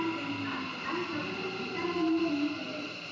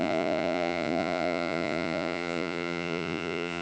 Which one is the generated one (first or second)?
second